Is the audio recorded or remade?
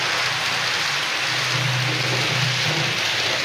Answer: recorded